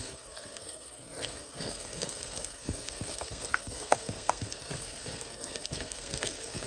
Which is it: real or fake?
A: fake